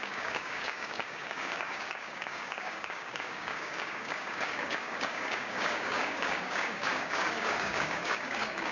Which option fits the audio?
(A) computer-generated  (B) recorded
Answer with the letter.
A